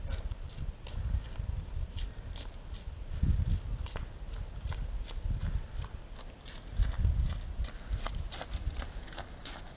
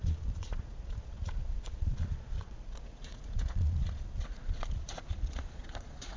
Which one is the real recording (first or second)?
first